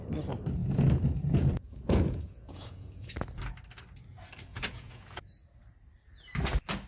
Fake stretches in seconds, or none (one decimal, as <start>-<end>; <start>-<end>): 0.6-3.1; 4.5-5.2